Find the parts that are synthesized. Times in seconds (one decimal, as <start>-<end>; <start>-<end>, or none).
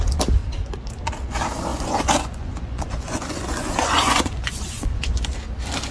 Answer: 1.7-5.2